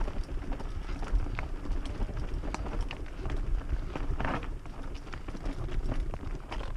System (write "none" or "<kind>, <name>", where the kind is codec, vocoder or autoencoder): none